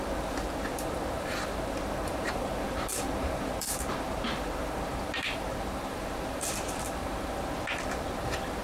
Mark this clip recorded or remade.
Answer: remade